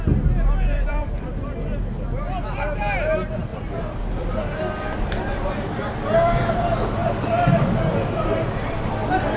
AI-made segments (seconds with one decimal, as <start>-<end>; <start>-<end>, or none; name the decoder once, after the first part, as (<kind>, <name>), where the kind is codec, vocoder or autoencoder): 0.9-1.4 (vocoder, BigVGAN v2); 3.5-6.5; 7.0-7.5